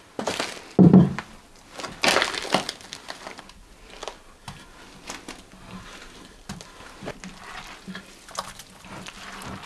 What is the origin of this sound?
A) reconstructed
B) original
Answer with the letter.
B